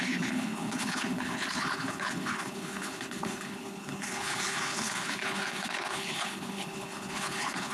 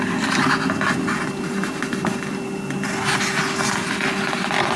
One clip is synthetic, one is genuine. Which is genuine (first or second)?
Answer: second